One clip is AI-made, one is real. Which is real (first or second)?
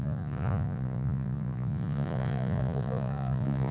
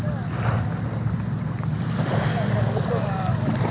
second